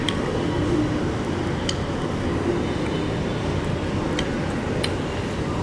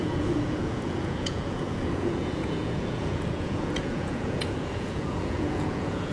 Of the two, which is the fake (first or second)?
second